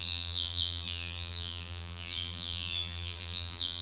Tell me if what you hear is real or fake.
fake